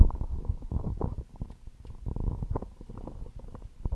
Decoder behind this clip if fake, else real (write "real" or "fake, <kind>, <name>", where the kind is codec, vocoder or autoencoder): real